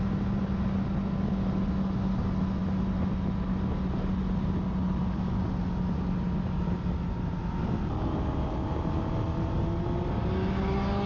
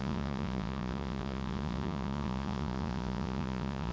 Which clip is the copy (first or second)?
second